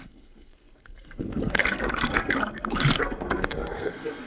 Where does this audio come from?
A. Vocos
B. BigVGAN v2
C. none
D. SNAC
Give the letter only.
D